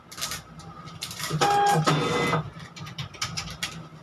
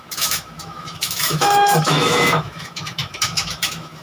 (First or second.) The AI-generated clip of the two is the second